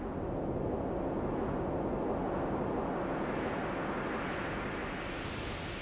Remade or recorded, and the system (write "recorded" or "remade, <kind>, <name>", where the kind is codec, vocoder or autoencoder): recorded